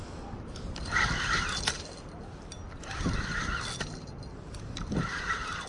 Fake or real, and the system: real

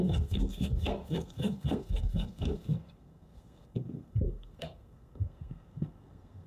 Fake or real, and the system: fake, codec, SNAC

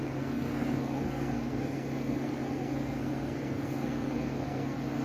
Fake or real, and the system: fake, codec, SNAC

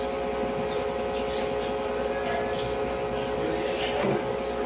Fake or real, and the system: real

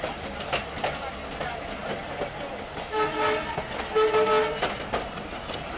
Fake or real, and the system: real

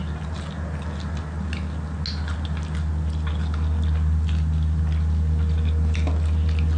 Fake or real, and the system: real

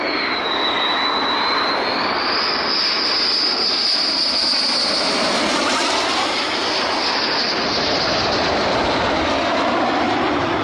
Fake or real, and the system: real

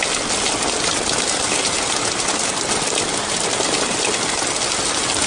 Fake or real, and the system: real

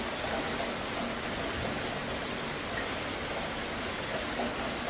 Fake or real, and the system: real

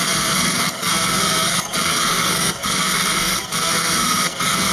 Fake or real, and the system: fake, codec, SNAC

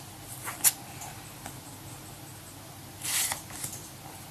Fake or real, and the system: real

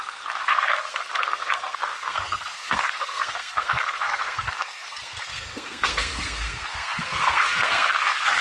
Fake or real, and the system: fake, codec, SNAC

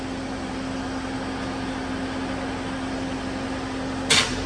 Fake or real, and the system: real